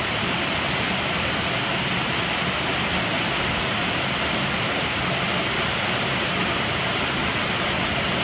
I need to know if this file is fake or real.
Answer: real